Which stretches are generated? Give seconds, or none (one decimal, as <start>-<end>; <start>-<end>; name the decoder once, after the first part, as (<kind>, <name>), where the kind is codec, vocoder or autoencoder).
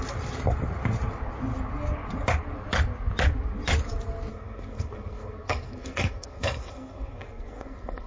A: 4.3-8.1 (codec, SNAC)